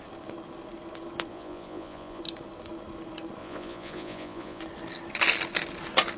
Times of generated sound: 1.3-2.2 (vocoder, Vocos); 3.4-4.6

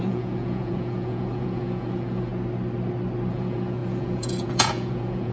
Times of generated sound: 0.0-2.3 (vocoder, Vocos); 3.3-5.3

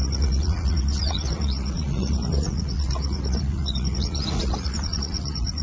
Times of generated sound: 0.0-5.6 (vocoder, Vocos)

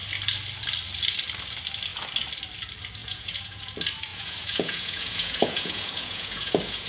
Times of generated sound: 3.0-3.6 (vocoder, Vocos); 4.1-6.9